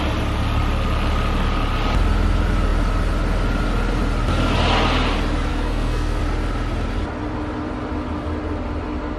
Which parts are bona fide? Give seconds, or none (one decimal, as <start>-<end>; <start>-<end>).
0.0-5.5; 6.2-9.2